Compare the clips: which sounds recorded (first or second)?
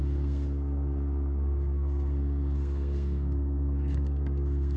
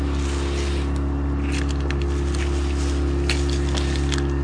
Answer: second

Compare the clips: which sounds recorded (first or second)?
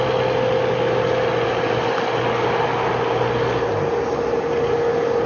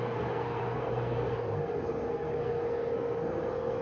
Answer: first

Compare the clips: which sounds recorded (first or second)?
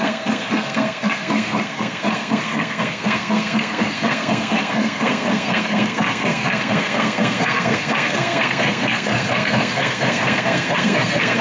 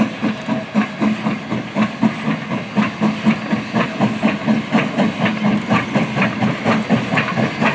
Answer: second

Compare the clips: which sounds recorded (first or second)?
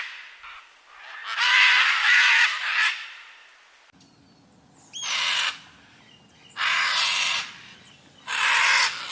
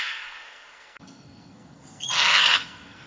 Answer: first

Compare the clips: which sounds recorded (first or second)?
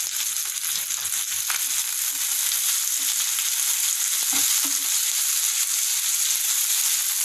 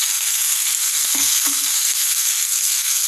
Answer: first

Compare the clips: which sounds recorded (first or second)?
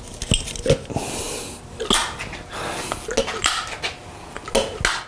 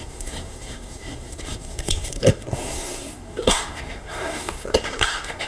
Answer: first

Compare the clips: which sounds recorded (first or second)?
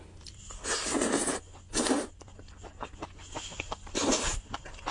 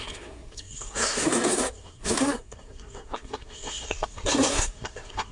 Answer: first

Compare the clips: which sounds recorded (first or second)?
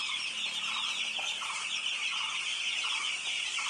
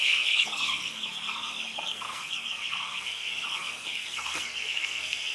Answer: first